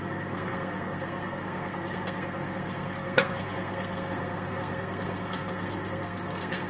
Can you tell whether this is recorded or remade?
remade